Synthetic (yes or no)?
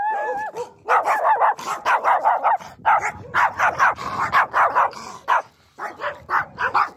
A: no